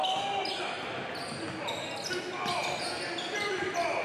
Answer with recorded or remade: recorded